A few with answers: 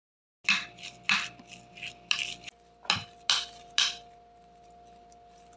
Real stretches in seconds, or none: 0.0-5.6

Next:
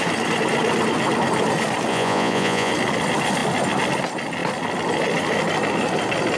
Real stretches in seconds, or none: 0.0-1.9; 2.7-6.4

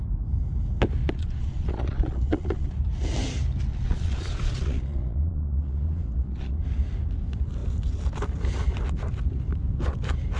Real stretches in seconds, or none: 0.0-1.0; 2.7-3.7; 6.6-10.4

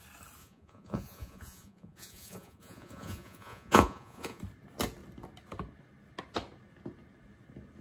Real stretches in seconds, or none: 0.0-0.4; 4.4-7.8

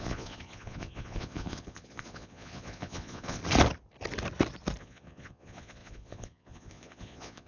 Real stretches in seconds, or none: 3.4-4.8